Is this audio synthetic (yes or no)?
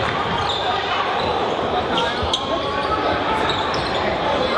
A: yes